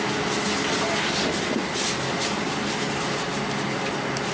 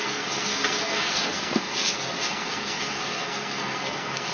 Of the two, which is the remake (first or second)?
second